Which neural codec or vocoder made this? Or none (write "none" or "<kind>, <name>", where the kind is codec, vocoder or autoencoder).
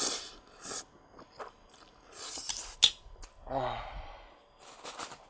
none